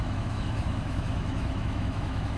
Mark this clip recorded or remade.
remade